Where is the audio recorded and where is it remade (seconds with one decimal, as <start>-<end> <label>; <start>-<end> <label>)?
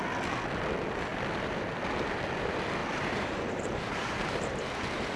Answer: 0.0-2.8 recorded; 2.8-4.6 remade; 4.6-5.2 recorded